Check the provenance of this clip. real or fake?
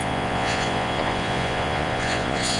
fake